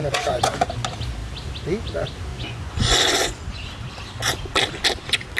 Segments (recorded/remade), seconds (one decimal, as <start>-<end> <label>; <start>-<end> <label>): 0.0-0.7 remade; 0.7-2.3 recorded; 2.3-3.7 remade; 3.7-5.4 recorded